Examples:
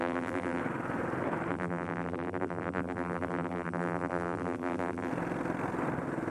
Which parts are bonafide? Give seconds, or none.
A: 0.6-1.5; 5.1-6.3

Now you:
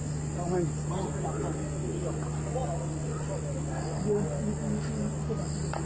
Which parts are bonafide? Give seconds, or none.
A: 0.0-5.9

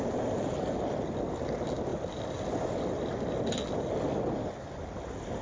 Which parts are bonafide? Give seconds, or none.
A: 0.0-5.4

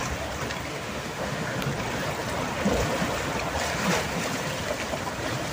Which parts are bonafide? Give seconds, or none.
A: 0.0-0.7; 1.6-5.5

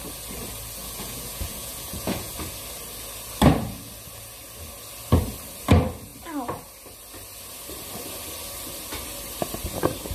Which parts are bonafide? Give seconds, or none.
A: 0.0-0.8; 2.3-10.1

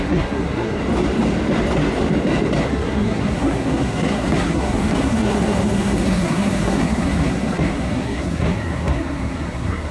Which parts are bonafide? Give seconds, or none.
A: 0.8-2.6

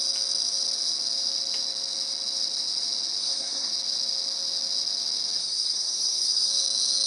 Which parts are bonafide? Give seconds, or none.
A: 0.0-3.2; 3.7-5.4; 6.5-7.1